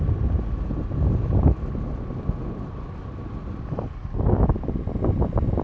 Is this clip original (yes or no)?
yes